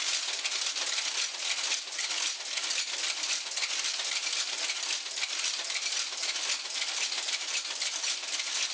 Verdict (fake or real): real